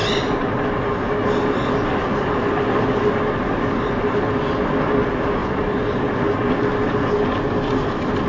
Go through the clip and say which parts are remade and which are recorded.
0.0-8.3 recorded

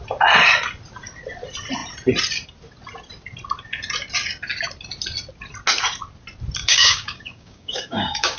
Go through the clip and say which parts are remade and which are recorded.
0.0-6.6 recorded; 6.6-8.4 remade